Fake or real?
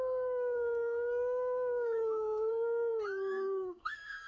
fake